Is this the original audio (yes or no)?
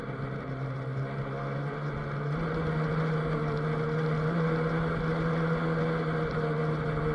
yes